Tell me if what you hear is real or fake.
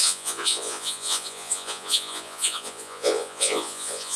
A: fake